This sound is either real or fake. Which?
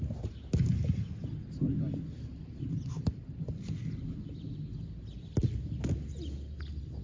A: real